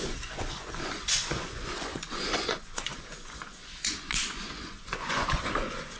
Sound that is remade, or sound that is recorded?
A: remade